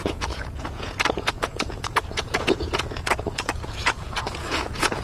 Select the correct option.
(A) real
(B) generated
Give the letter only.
B